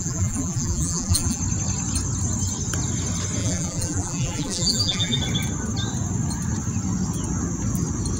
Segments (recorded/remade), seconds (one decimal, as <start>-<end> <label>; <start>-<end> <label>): 0.0-1.4 remade; 1.4-3.4 recorded; 3.4-5.2 remade; 5.2-8.2 recorded